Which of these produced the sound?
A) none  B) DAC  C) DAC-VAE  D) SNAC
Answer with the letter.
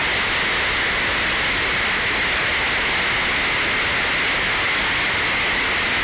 A